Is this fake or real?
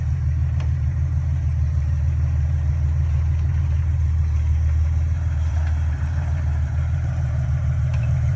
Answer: fake